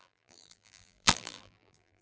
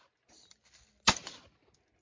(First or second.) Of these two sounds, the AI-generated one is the first